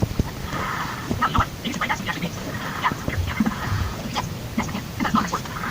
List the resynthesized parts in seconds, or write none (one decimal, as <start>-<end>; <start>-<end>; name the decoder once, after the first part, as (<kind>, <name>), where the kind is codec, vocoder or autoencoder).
3.2-4.2 (vocoder, Vocos)